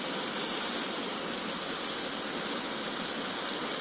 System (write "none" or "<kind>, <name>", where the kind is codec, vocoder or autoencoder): none